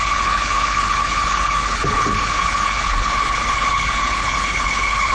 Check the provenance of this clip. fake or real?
fake